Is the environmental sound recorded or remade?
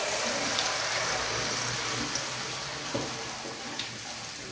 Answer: recorded